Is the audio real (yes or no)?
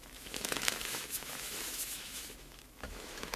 no